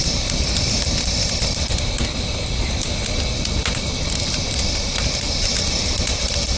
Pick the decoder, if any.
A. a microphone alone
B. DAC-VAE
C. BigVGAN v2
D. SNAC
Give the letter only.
C